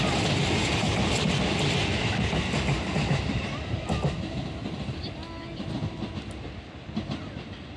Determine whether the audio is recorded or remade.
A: recorded